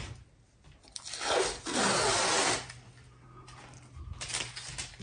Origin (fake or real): real